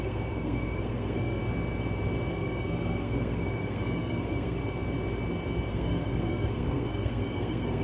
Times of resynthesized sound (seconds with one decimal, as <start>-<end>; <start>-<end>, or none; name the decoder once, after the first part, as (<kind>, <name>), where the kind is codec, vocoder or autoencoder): 0.0-1.4 (codec, SNAC); 2.3-4.6; 5.7-7.8